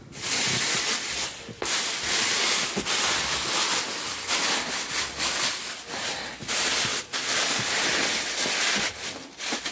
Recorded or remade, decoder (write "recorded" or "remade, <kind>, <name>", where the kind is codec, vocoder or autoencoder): recorded